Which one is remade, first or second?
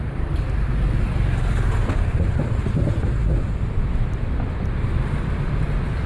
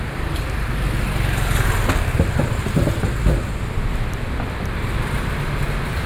first